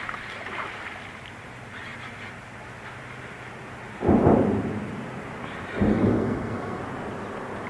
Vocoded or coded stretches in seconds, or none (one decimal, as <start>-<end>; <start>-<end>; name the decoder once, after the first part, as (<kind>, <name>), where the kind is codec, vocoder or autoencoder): 5.9-6.8 (codec, SNAC)